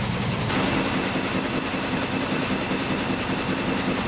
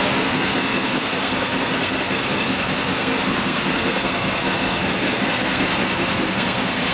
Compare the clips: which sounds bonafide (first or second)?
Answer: first